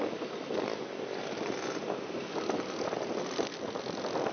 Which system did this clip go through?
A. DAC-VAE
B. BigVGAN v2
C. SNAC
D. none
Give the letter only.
D